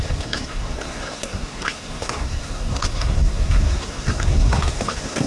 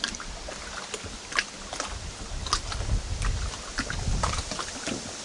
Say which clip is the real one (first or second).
second